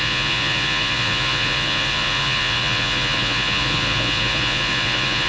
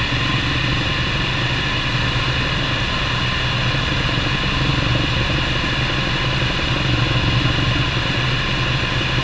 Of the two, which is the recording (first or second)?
second